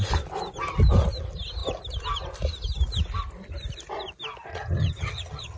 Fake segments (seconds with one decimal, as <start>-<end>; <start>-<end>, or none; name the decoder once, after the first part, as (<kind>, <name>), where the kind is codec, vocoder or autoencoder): 4.5-5.6 (vocoder, HiFi-GAN)